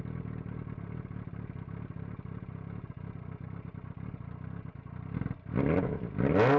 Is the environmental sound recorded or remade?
recorded